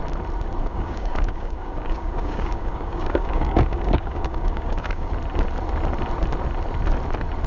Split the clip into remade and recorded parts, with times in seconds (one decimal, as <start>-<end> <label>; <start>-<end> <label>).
0.0-0.6 recorded; 0.6-5.1 remade; 5.1-7.5 recorded